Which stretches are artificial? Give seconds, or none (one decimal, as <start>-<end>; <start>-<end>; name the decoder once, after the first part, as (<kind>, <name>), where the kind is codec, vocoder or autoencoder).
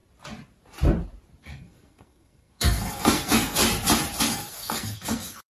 1.4-3.6 (codec, SNAC); 4.2-5.5